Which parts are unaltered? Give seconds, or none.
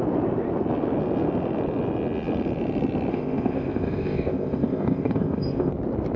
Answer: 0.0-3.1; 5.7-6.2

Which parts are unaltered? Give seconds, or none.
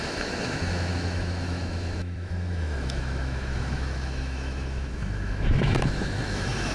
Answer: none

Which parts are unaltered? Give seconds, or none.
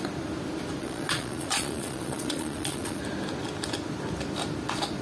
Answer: 0.0-0.8; 3.0-5.0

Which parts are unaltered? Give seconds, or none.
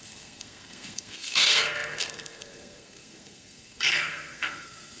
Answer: none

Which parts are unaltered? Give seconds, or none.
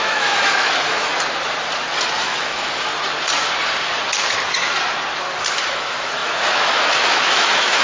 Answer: 1.1-2.2; 2.9-5.5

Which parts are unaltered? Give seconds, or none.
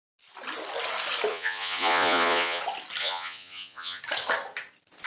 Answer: 0.0-1.3; 2.6-3.0; 4.0-5.1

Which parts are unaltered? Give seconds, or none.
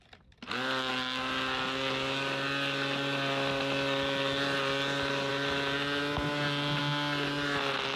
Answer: 0.0-8.0